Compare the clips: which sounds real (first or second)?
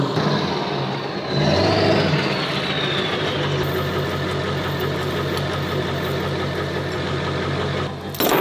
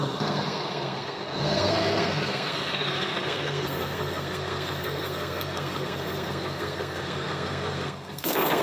first